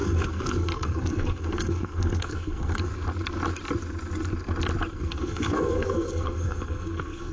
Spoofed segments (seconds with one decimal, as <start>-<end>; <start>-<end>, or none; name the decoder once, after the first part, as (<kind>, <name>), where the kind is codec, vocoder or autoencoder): 0.0-2.9 (codec, SNAC); 4.9-7.3